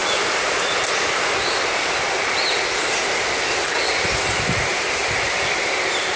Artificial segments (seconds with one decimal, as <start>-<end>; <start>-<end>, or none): none

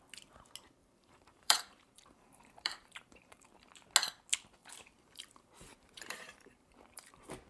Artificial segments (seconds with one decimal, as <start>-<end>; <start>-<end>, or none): 0.8-3.5; 4.6-7.1

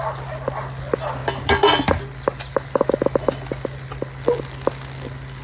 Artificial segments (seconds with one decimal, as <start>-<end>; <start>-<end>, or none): none

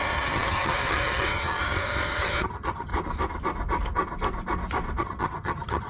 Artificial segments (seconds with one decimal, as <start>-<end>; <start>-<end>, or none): 0.0-2.9; 5.0-5.9

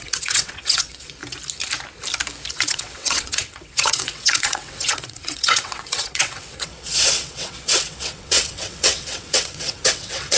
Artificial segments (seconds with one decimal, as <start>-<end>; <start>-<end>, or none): 0.0-1.2; 2.5-10.4